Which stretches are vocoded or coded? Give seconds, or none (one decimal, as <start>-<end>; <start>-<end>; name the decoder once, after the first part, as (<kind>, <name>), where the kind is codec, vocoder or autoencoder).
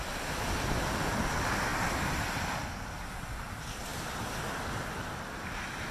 none